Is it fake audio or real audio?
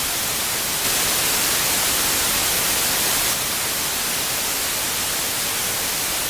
real